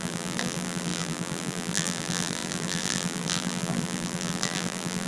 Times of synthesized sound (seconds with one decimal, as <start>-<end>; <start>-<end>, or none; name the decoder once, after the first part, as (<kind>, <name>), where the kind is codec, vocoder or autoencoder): 0.0-5.1 (vocoder, BigVGAN v2)